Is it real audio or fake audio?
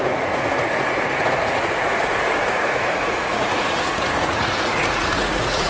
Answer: fake